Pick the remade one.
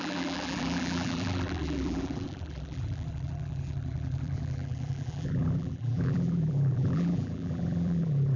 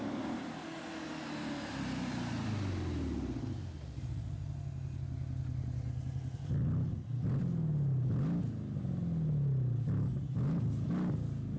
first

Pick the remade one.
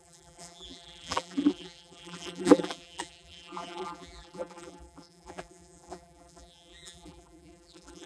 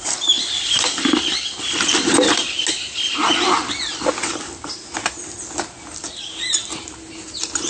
first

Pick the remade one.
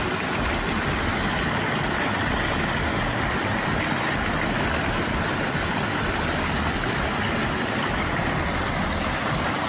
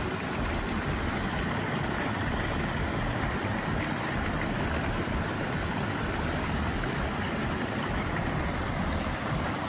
second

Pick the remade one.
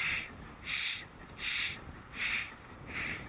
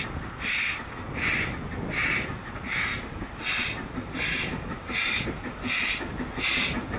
first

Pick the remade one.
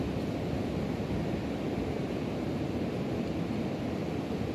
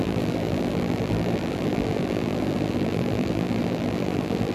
second